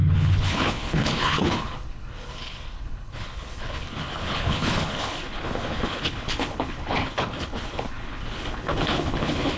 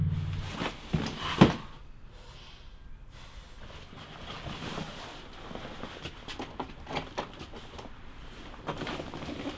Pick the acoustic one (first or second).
second